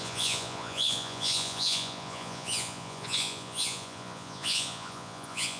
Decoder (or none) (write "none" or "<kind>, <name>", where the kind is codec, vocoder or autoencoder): vocoder, Vocos